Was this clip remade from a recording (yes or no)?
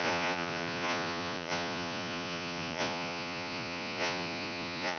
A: yes